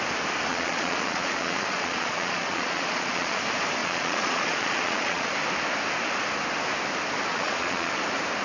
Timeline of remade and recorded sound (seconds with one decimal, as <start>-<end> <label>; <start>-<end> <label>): 0.0-0.5 recorded; 0.5-3.4 remade; 3.4-3.8 recorded; 3.8-5.3 remade; 5.3-7.3 recorded; 7.3-7.9 remade; 7.9-8.4 recorded